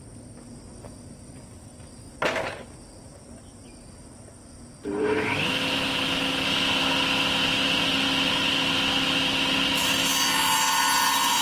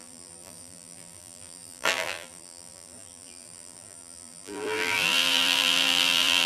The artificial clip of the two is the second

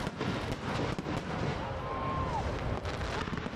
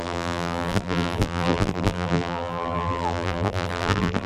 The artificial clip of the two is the second